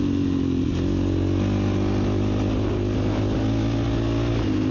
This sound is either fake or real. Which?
real